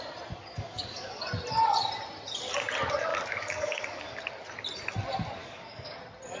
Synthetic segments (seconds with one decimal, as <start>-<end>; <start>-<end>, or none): 0.4-1.2; 3.1-4.2; 5.4-6.0